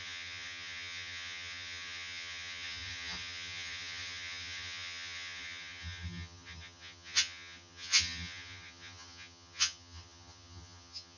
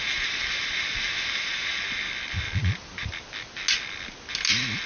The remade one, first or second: first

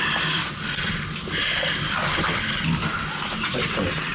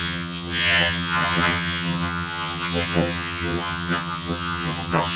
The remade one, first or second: second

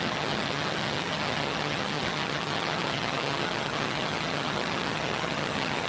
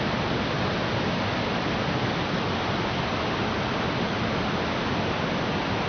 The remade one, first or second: first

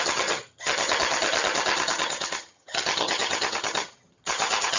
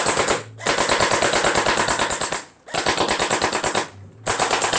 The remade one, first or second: first